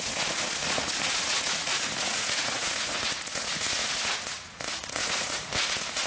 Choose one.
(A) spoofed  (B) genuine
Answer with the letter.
A